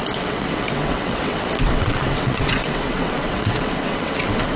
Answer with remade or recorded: remade